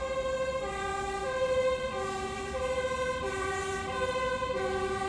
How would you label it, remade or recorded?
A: recorded